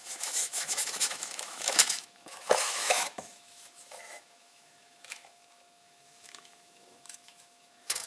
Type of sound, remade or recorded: remade